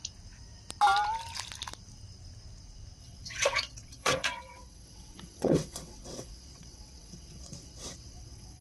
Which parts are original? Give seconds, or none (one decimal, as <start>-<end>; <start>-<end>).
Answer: 0.0-3.0